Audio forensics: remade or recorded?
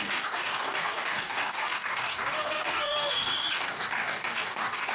remade